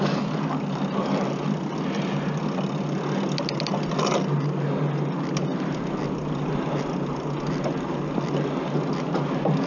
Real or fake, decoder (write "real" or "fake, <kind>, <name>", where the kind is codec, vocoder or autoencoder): real